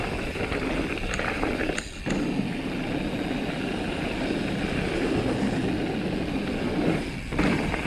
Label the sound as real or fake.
real